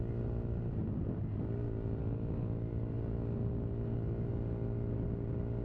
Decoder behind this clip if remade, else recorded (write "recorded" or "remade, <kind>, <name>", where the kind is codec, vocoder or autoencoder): recorded